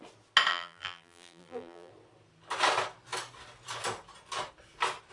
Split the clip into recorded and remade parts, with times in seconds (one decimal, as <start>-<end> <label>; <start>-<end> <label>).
0.0-0.5 recorded; 0.5-1.9 remade; 1.9-5.1 recorded